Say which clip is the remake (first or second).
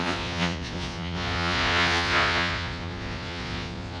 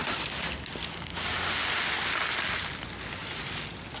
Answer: first